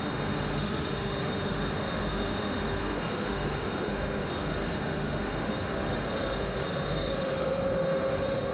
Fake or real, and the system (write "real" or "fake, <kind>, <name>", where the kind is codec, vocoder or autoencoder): fake, autoencoder, DAC-VAE